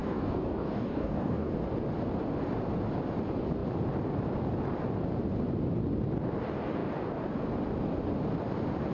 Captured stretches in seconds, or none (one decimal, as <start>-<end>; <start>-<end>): 1.5-8.9